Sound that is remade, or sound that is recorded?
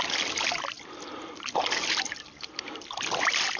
recorded